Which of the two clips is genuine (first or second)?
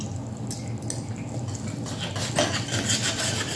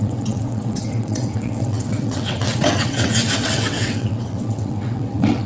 first